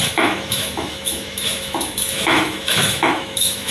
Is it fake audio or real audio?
fake